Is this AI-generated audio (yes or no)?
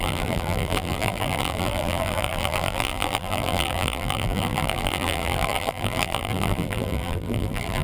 yes